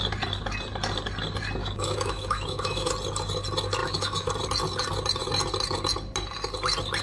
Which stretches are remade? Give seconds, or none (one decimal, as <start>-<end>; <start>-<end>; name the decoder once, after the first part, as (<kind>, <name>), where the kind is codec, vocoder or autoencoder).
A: 1.6-2.9 (autoencoder, DAC-VAE); 3.8-4.3